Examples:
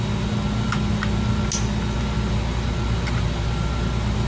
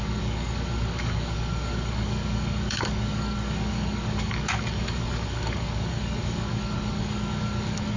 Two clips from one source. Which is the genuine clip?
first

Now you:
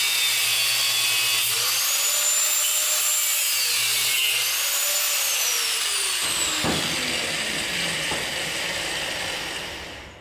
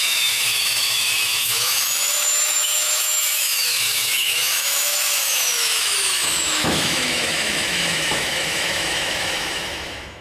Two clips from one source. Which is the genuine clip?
first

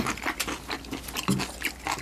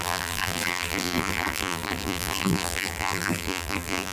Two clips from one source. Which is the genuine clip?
first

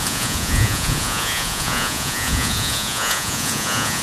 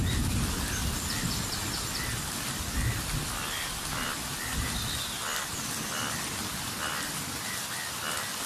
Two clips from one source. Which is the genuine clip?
second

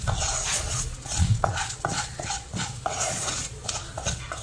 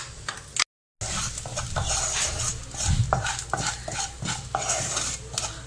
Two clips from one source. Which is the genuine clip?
second